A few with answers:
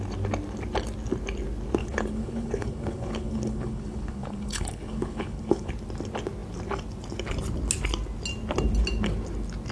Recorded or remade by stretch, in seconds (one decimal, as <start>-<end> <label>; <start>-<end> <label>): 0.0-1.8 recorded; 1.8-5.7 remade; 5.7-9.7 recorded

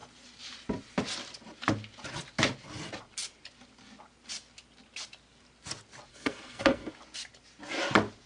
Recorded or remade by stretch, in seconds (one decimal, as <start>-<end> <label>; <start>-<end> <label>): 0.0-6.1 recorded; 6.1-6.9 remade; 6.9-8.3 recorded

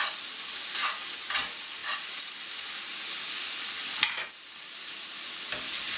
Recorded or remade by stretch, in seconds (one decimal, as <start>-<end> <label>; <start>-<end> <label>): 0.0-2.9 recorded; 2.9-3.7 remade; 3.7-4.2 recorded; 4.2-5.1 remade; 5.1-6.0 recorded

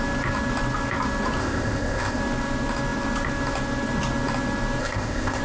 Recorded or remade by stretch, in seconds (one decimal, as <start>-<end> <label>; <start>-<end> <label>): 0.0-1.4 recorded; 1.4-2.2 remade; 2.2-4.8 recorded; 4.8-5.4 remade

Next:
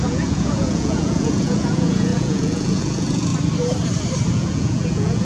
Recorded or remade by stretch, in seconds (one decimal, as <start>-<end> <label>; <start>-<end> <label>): 0.0-3.3 remade; 3.3-4.3 recorded; 4.3-5.2 remade

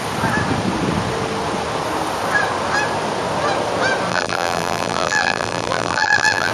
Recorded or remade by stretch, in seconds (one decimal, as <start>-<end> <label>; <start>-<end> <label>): 0.0-4.1 recorded; 4.1-6.5 remade

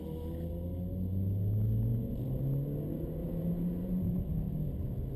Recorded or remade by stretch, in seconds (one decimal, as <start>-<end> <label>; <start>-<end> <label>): 0.0-1.9 recorded; 1.9-2.4 remade; 2.4-3.2 recorded; 3.2-4.3 remade; 4.3-5.2 recorded

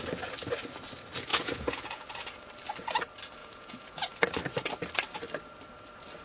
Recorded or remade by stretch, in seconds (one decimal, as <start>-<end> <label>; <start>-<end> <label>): 0.0-1.3 recorded; 1.3-2.4 remade; 2.4-3.4 recorded; 3.4-4.1 remade; 4.1-6.2 recorded